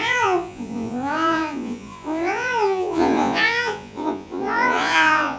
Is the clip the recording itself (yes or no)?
no